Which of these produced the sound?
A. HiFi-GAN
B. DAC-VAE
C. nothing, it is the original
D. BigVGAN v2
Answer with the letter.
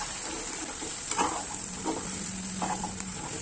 C